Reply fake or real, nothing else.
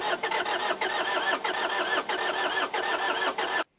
real